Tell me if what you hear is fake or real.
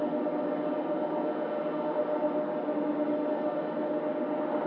real